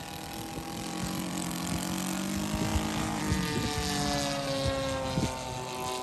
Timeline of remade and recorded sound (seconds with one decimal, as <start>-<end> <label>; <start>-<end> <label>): 0.0-6.0 recorded